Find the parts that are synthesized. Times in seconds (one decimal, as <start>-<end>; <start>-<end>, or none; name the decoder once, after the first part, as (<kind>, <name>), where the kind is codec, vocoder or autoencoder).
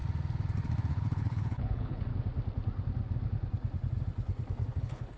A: 0.9-2.1 (codec, HILCodec); 4.8-5.2